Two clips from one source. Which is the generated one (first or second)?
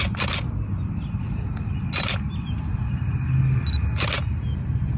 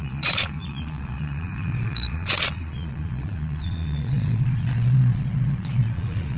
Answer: second